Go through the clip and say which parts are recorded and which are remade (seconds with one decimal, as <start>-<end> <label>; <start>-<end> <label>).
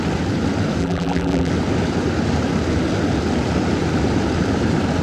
0.0-0.8 recorded; 0.8-1.5 remade; 1.5-5.0 recorded